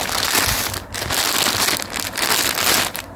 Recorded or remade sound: recorded